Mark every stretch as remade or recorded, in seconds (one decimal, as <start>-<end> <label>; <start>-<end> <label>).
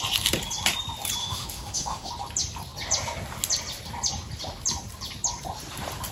0.0-1.2 recorded; 1.2-2.1 remade; 2.1-6.1 recorded